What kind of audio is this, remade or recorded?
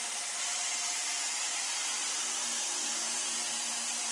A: remade